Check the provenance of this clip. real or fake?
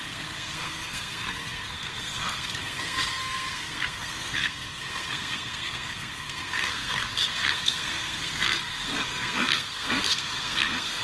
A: fake